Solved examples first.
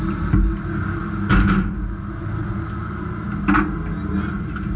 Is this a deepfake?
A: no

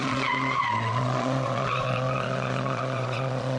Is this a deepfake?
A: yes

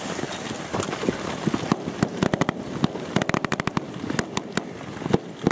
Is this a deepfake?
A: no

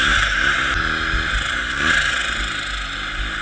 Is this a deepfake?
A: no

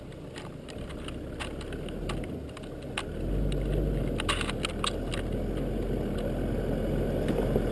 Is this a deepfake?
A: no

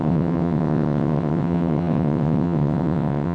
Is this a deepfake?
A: yes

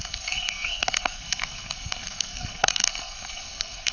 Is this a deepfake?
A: yes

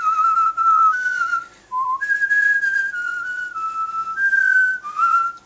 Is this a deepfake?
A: no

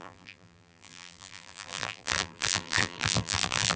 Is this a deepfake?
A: yes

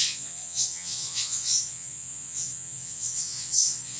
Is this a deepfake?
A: yes